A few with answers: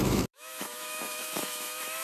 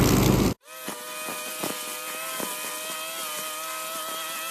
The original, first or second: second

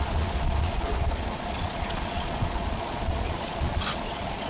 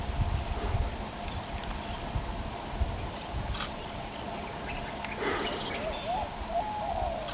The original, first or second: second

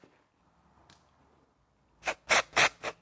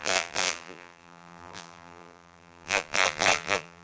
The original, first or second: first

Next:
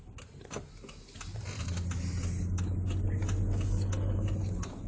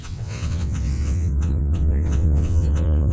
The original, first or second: first